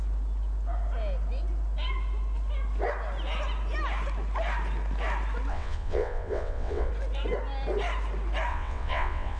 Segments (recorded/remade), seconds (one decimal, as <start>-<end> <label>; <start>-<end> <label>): 0.0-5.5 recorded; 5.5-6.9 remade; 6.9-8.5 recorded; 8.5-9.4 remade

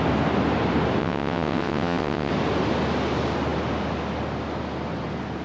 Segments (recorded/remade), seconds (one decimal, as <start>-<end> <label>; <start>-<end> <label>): 0.0-1.0 recorded; 1.0-2.3 remade; 2.3-5.4 recorded

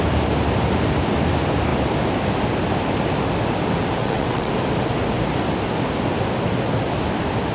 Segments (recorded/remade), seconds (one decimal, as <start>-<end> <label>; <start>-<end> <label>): 0.0-4.0 recorded; 4.0-4.5 remade; 4.5-7.5 recorded

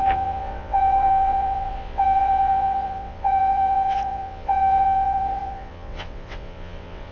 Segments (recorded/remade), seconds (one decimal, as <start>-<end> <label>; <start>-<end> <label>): 0.0-7.1 remade